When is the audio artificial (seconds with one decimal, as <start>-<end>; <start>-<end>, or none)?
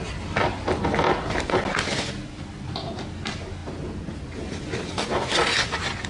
none